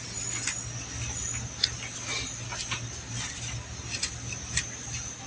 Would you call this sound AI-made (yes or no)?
no